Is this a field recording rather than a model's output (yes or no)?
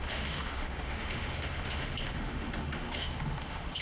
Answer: no